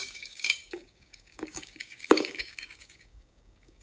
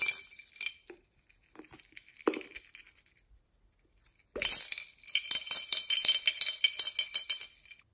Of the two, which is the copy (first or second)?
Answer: first